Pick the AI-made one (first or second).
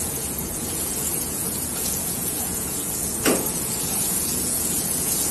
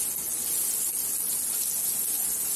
first